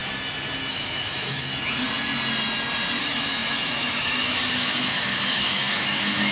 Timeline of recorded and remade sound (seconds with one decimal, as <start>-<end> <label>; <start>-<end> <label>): 0.0-0.7 recorded; 0.7-1.5 remade; 1.5-3.0 recorded; 3.0-6.3 remade